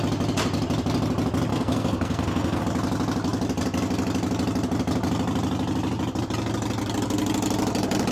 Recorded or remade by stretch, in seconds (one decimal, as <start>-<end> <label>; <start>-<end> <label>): 0.0-1.5 recorded; 1.5-2.6 remade; 2.6-8.1 recorded